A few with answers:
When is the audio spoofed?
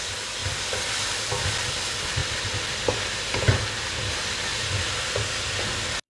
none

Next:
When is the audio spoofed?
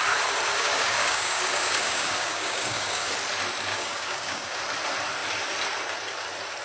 0.5-3.1; 3.7-4.6